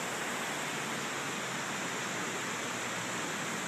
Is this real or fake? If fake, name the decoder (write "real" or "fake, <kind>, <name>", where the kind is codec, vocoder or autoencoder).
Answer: real